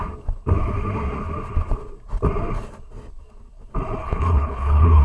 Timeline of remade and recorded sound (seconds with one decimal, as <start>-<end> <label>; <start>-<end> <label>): 0.0-4.0 recorded; 4.0-5.0 remade

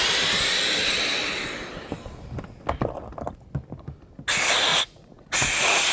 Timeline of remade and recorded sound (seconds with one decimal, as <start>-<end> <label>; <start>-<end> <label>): 0.0-4.7 recorded; 4.7-5.9 remade

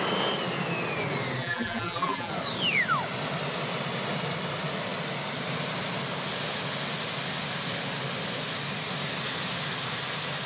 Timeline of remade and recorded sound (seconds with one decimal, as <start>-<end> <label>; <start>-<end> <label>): 0.0-1.4 recorded; 1.4-2.3 remade; 2.3-10.5 recorded

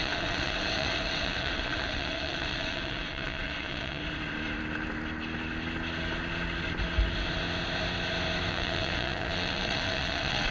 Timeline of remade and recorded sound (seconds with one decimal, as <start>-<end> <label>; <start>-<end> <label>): 0.0-4.0 remade; 4.0-8.5 recorded; 8.5-10.5 remade

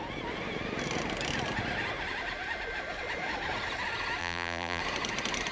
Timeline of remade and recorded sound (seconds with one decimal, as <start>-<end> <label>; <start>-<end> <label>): 0.0-4.2 recorded; 4.2-4.8 remade; 4.8-5.5 recorded

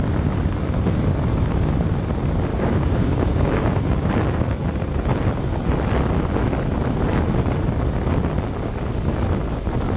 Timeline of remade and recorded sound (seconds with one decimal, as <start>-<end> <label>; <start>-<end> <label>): 0.0-2.5 recorded; 2.5-4.1 remade; 4.1-10.0 recorded

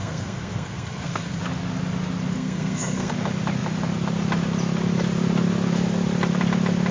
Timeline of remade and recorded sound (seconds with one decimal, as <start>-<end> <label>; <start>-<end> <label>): 0.0-1.4 remade; 1.4-2.3 recorded; 2.3-3.1 remade; 3.1-6.9 recorded

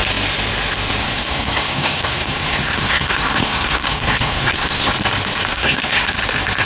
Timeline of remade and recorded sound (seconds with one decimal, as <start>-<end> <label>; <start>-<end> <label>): 0.0-1.0 recorded; 1.0-4.9 remade; 4.9-5.5 recorded; 5.5-6.1 remade; 6.1-6.7 recorded